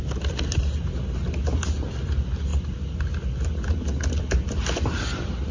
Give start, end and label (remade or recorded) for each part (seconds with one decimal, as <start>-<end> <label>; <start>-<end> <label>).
0.0-5.5 recorded